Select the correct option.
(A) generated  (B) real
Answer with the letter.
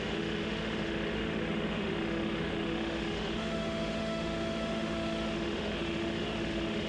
A